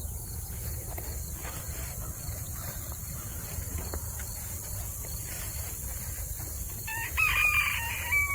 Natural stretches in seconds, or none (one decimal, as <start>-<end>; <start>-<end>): 0.0-1.4; 1.9-2.5; 6.0-6.9